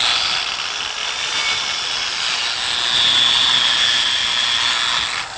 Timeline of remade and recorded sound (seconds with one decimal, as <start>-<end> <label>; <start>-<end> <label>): 0.0-5.4 recorded